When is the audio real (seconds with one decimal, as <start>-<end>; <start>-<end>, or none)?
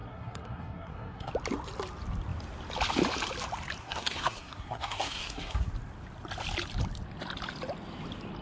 1.3-3.8; 5.7-8.4